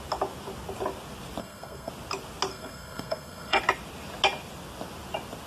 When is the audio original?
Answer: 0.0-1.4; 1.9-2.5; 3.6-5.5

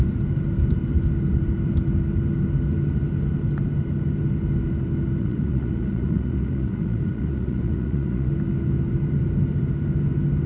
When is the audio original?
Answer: 0.0-5.2; 8.3-10.5

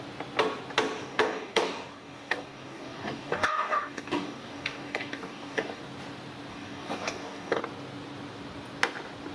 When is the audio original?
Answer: 0.0-1.0; 5.8-6.5; 7.6-9.3

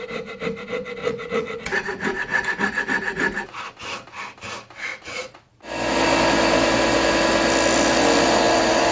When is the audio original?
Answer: 0.0-1.0; 3.6-4.9; 5.6-8.9

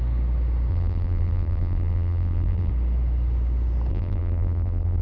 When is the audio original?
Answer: 0.0-0.7; 2.7-3.9

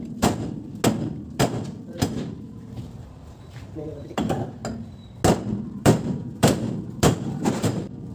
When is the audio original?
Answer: 0.7-1.4; 4.6-5.6